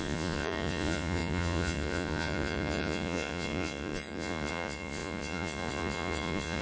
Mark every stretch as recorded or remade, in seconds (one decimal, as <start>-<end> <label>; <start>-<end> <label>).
0.0-6.6 remade